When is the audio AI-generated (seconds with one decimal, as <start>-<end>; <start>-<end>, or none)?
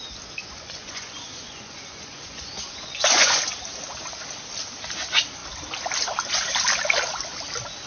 0.4-3.4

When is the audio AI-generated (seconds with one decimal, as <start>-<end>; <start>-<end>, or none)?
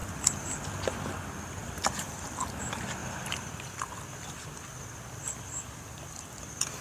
0.0-0.5; 1.6-2.6; 3.0-5.3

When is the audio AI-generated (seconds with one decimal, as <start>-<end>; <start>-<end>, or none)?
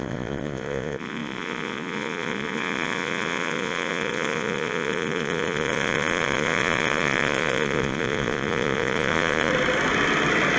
0.0-9.5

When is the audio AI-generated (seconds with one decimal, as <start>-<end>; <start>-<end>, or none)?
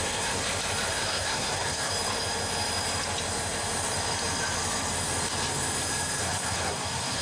0.0-0.4; 0.9-1.9; 6.2-7.2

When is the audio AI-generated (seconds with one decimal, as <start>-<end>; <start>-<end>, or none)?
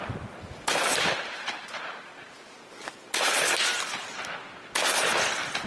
none